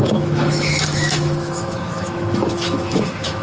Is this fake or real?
fake